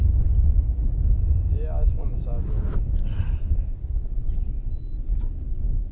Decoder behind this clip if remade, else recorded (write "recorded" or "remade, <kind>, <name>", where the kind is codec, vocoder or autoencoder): recorded